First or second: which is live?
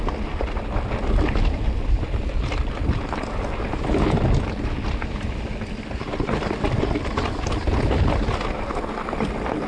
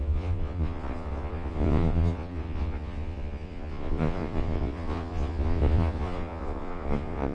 first